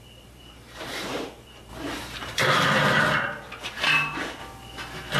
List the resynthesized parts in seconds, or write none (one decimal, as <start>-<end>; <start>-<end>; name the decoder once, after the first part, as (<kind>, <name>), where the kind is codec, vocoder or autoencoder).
0.0-4.4 (vocoder, BigVGAN v2)